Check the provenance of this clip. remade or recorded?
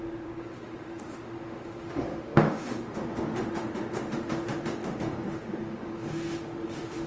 remade